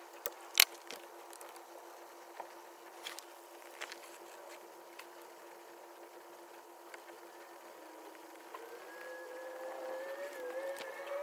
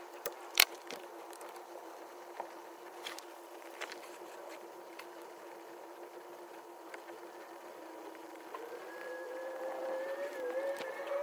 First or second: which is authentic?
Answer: first